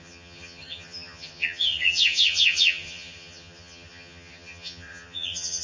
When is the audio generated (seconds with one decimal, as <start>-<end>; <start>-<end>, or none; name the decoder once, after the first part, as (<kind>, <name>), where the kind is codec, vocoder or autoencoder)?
0.0-5.6 (vocoder, HiFi-GAN)